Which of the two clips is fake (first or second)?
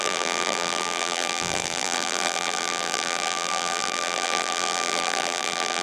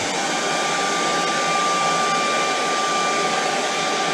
first